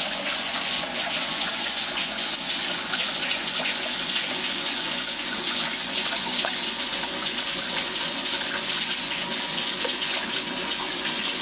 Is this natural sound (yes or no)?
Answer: no